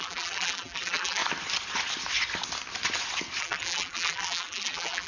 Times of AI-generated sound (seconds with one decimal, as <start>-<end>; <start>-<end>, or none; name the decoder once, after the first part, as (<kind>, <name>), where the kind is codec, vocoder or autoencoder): 0.0-1.2 (vocoder, BigVGAN v2); 3.4-5.1